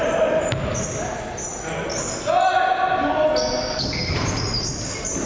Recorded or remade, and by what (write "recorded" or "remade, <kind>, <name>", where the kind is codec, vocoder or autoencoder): recorded